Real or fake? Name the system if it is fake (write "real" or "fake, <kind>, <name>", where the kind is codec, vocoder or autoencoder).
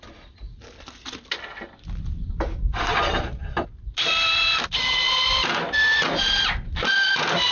real